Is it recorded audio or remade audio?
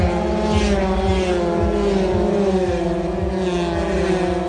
recorded